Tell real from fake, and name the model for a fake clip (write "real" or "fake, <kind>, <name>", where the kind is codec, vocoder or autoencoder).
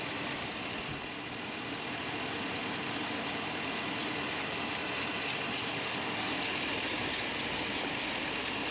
real